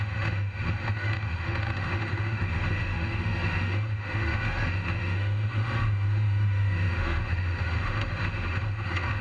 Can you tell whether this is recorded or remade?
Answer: remade